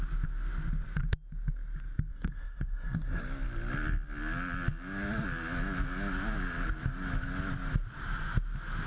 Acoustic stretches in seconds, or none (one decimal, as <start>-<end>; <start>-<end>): 0.0-2.1; 3.2-8.9